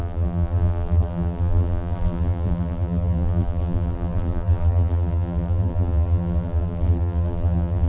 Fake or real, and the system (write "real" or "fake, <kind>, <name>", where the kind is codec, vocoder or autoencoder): fake, vocoder, BigVGAN v2